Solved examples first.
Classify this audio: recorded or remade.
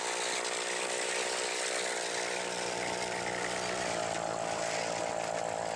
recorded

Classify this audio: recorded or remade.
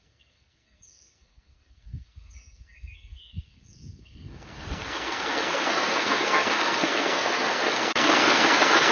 remade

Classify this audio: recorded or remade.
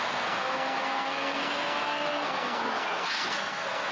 remade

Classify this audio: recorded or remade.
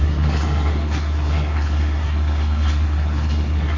remade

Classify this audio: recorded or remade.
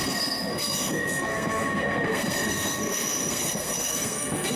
remade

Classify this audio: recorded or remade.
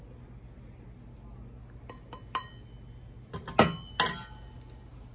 recorded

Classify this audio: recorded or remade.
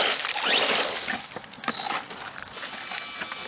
recorded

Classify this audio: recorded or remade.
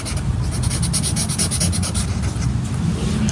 recorded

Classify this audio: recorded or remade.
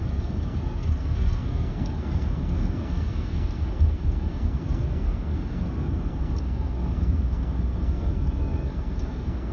remade